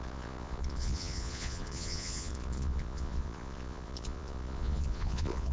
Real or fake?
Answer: fake